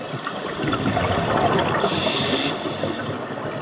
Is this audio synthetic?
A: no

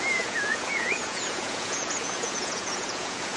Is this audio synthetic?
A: yes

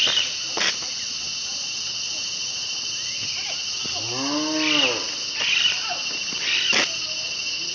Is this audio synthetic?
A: no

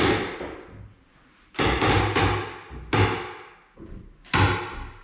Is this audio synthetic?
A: no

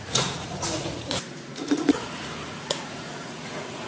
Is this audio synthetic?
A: yes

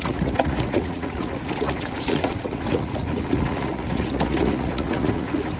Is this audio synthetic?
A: yes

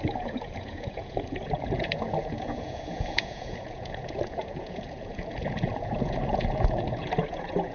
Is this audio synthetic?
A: yes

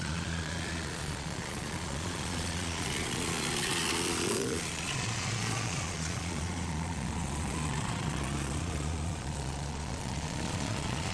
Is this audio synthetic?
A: yes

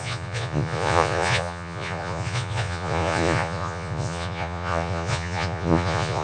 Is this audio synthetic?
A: yes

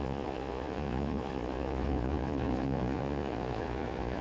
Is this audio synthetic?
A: yes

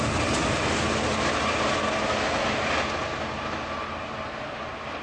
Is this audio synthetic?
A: no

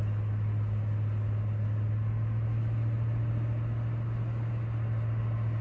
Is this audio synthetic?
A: no